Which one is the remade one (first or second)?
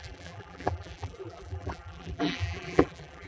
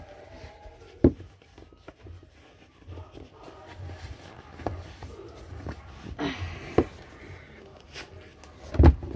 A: first